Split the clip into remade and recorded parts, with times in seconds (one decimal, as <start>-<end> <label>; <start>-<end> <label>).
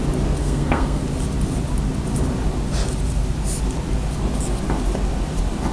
0.0-0.4 recorded; 0.4-1.0 remade; 1.0-5.7 recorded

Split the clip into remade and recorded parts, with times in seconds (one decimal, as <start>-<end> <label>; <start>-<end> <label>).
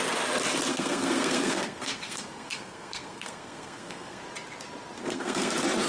0.0-0.7 recorded; 0.7-4.2 remade; 4.2-5.0 recorded; 5.0-5.5 remade; 5.5-5.9 recorded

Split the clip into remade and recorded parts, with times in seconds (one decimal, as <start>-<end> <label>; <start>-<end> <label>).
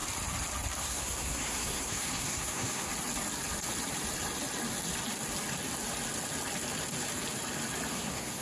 0.0-0.8 recorded; 0.8-2.9 remade; 2.9-7.9 recorded; 7.9-8.4 remade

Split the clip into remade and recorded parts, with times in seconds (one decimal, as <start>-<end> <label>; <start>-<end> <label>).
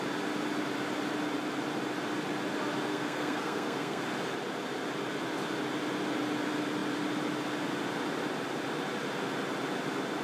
0.0-2.9 recorded; 2.9-4.0 remade; 4.0-10.2 recorded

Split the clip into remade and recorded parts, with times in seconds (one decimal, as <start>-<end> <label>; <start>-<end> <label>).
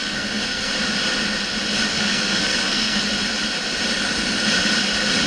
0.0-0.7 remade; 0.7-1.9 recorded; 1.9-3.0 remade; 3.0-5.3 recorded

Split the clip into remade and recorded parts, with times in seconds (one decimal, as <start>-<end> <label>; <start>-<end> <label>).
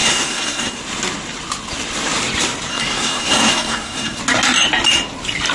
0.0-0.8 remade; 0.8-2.7 recorded; 2.7-4.2 remade; 4.2-5.5 recorded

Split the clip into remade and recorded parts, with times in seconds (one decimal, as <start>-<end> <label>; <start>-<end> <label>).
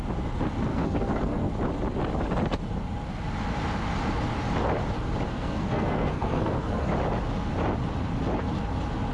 0.0-0.7 recorded; 0.7-1.5 remade; 1.5-5.3 recorded; 5.3-6.9 remade; 6.9-9.1 recorded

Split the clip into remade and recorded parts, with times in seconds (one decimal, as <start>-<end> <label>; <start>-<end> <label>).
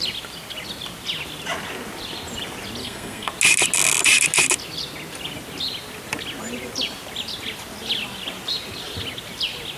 0.0-2.8 recorded; 2.8-3.3 remade; 3.3-9.8 recorded